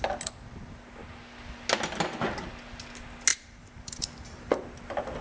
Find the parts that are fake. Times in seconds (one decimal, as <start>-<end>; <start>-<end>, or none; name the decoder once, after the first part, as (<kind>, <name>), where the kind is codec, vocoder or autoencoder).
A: 3.3-4.5 (vocoder, BigVGAN v2)